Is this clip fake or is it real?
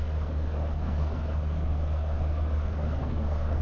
fake